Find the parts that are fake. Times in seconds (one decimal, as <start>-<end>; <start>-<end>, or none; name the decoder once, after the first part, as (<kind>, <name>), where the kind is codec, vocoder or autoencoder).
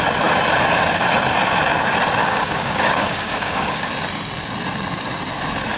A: 2.2-3.9 (codec, DAC)